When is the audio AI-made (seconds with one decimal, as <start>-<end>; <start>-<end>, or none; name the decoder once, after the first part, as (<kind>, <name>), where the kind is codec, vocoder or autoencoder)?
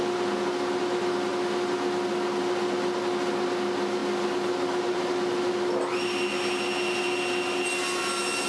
none